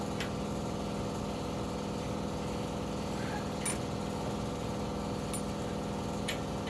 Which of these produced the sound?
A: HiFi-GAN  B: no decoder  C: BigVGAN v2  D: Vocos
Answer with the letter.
B